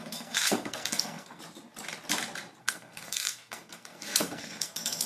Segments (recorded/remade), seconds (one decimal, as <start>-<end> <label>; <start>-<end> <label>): 0.0-1.4 remade; 1.4-2.6 recorded; 2.6-5.1 remade